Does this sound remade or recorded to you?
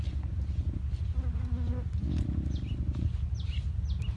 recorded